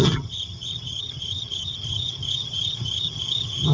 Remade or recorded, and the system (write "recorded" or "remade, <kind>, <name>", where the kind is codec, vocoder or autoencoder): remade, vocoder, HiFi-GAN